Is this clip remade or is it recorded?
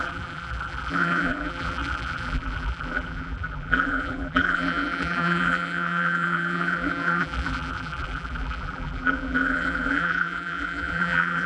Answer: remade